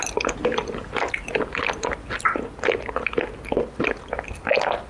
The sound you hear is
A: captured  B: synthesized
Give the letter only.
A